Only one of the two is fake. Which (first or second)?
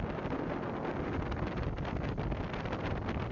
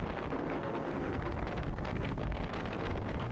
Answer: second